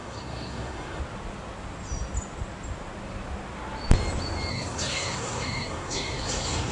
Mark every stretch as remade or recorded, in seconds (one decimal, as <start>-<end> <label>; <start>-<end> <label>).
0.0-1.0 remade; 1.0-4.5 recorded; 4.5-6.7 remade